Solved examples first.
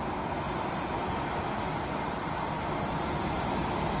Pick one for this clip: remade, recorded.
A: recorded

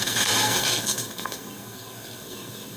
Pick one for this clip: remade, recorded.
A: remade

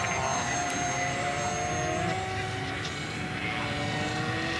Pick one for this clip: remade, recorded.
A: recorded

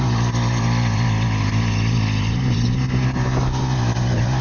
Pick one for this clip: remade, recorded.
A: recorded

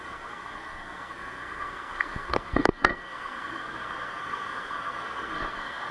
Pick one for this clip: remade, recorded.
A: remade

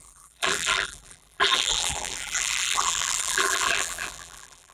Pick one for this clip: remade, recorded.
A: remade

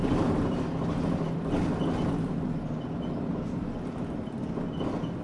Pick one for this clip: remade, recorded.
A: recorded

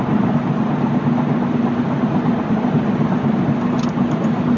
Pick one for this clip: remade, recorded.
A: recorded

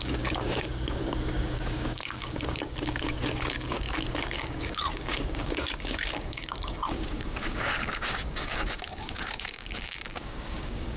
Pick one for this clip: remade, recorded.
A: remade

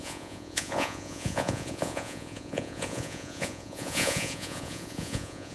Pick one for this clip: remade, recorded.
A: remade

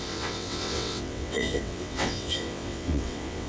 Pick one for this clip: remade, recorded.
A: remade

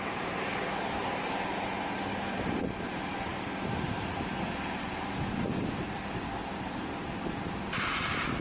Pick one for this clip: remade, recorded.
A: recorded